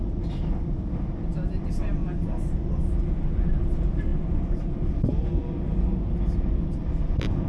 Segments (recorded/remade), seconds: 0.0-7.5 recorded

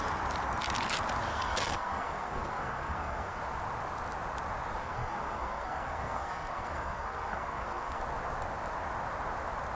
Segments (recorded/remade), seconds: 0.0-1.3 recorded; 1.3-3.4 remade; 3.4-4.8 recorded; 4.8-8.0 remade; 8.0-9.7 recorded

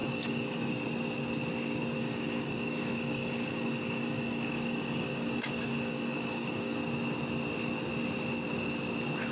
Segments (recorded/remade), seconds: 0.0-0.7 remade; 0.7-2.0 recorded; 2.0-6.8 remade; 6.8-9.3 recorded